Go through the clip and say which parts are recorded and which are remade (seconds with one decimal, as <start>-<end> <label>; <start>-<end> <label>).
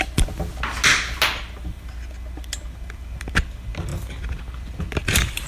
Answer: 0.0-5.5 recorded